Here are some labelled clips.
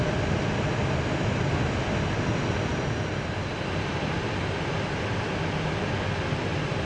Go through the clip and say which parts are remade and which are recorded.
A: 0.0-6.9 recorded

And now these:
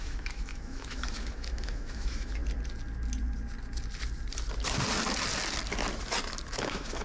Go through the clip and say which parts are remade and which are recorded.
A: 0.0-2.4 remade; 2.4-6.5 recorded; 6.5-7.0 remade

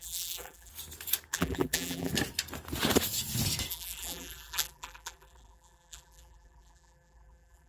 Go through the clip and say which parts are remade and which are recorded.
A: 0.0-0.7 remade; 0.7-1.3 recorded; 1.3-2.1 remade; 2.1-3.7 recorded; 3.7-7.7 remade

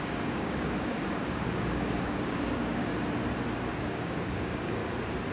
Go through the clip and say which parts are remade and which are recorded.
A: 0.0-2.9 remade; 2.9-3.8 recorded; 3.8-4.8 remade; 4.8-5.3 recorded